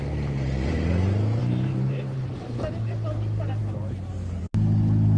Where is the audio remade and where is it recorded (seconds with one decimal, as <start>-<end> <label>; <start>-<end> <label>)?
0.0-1.4 recorded; 1.4-2.6 remade; 2.6-5.2 recorded